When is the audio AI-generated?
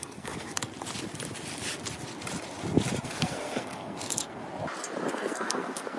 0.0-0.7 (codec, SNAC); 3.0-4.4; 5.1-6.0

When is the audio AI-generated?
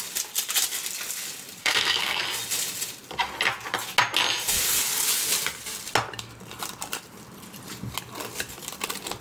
1.6-2.2 (codec, SNAC)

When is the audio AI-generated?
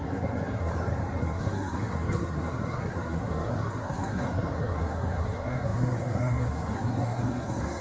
0.0-0.7 (codec, SNAC); 1.2-7.8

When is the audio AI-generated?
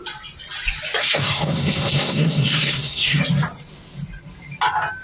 1.0-3.2 (codec, SNAC)